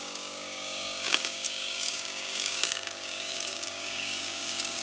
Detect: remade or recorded remade